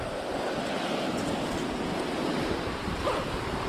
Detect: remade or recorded recorded